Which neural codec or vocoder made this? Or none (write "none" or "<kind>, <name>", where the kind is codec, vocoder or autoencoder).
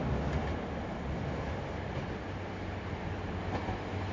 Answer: none